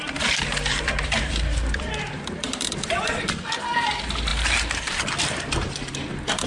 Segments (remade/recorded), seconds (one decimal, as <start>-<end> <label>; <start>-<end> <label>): 0.0-4.3 remade; 4.3-5.2 recorded; 5.2-6.5 remade